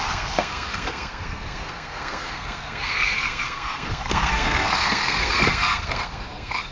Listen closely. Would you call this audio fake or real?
fake